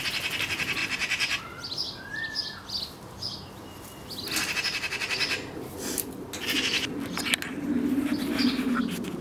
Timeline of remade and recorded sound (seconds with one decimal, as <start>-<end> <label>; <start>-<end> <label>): 0.0-9.2 recorded